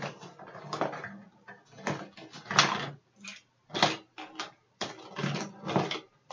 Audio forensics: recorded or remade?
recorded